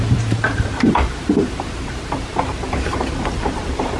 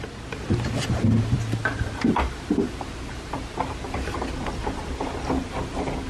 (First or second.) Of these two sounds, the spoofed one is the first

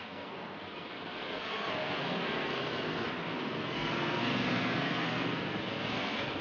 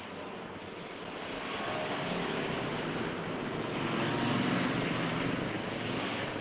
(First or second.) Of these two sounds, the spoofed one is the first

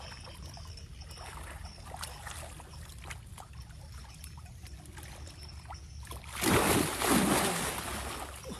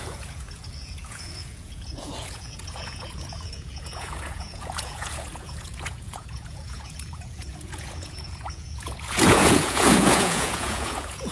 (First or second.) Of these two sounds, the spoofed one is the second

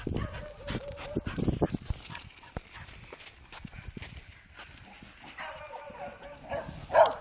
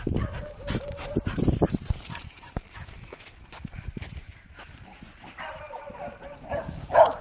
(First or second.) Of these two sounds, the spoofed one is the second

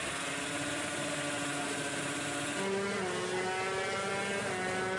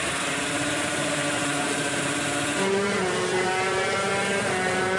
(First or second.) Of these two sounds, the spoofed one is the second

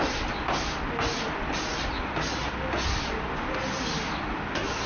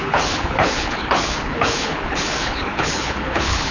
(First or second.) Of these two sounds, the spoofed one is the second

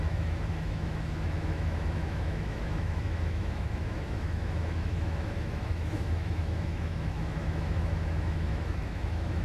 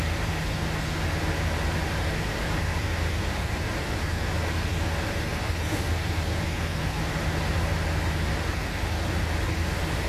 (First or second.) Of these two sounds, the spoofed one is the first